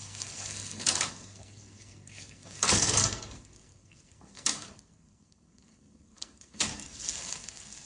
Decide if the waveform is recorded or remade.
remade